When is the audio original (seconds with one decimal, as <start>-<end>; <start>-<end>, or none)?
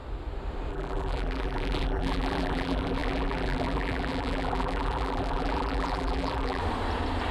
0.0-0.7; 6.6-7.3